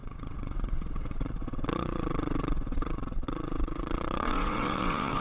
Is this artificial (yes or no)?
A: yes